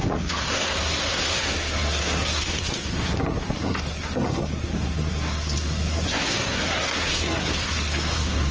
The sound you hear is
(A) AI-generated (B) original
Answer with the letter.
A